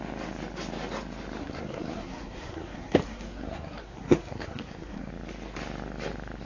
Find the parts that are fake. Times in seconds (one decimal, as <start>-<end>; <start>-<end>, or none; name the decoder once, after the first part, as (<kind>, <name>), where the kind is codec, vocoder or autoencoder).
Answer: 1.4-5.1 (codec, SNAC)